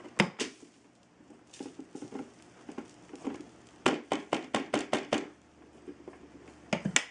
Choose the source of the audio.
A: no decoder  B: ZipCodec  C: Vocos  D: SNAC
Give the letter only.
A